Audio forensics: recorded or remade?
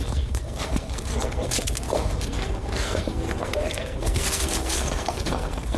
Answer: remade